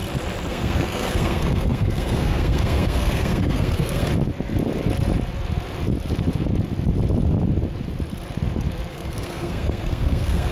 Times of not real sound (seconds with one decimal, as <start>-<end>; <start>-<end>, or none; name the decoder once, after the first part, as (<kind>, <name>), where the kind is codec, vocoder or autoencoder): 0.5-4.1 (codec, SNAC); 8.9-10.5